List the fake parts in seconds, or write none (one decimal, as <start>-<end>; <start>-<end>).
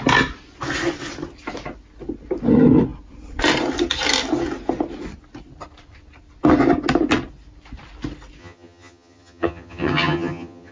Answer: 8.4-10.7